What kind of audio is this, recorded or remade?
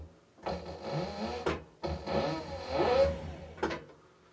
recorded